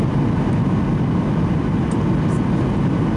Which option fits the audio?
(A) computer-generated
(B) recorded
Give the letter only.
B